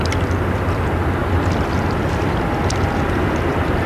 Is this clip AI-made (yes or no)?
no